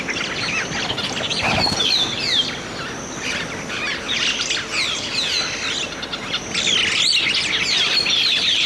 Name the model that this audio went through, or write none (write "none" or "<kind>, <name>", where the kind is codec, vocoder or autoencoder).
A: none